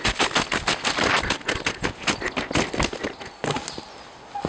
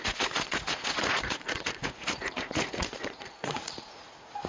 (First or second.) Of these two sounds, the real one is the first